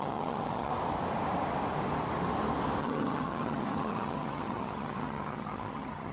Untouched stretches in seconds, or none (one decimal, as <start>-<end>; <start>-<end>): 0.7-2.8